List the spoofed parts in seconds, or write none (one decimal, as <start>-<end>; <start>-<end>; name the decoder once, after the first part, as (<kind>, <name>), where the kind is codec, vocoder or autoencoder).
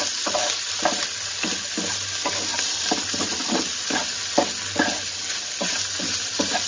none